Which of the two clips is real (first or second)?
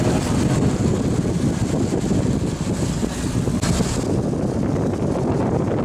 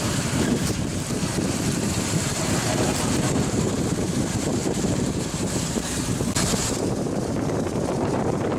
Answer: first